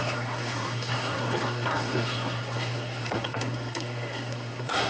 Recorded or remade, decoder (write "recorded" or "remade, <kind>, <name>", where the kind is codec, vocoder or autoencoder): remade, codec, SNAC